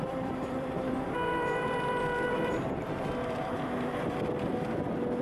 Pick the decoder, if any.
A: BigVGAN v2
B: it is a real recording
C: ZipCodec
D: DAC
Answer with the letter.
A